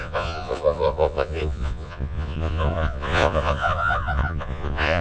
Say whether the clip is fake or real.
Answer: fake